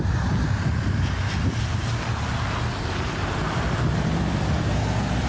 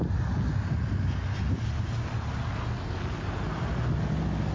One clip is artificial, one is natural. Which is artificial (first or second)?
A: first